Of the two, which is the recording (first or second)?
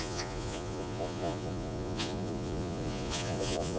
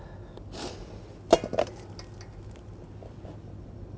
second